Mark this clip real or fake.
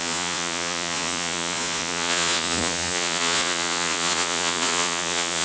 fake